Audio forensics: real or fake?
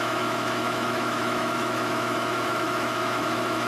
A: fake